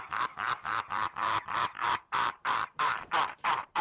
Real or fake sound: fake